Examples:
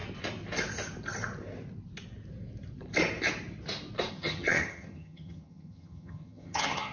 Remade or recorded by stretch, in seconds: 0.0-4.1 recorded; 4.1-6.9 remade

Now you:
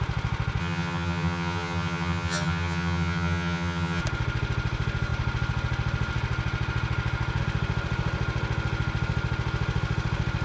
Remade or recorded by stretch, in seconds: 0.0-0.6 recorded; 0.6-4.0 remade; 4.0-10.4 recorded

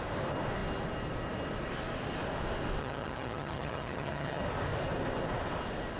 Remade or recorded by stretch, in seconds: 0.0-2.8 recorded; 2.8-4.4 remade; 4.4-6.0 recorded

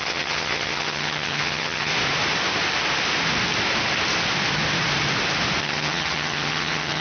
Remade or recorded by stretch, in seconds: 0.0-1.9 remade; 1.9-5.6 recorded; 5.6-7.0 remade